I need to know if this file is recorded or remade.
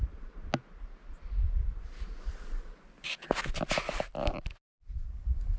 recorded